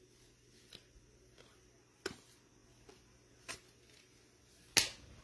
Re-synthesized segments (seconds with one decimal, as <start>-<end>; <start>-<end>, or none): none